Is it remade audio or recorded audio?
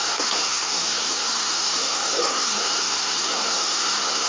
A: remade